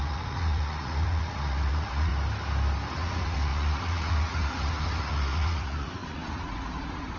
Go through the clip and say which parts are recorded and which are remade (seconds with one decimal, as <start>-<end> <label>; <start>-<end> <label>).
0.0-2.1 remade; 2.1-2.9 recorded; 2.9-7.2 remade